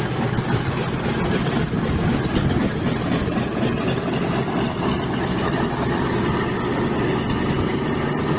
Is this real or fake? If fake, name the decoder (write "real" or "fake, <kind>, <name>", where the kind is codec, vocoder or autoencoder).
real